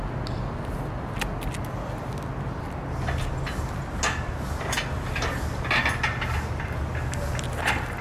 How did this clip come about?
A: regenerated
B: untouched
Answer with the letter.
B